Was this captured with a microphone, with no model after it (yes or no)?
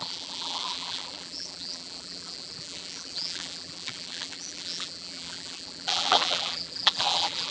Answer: no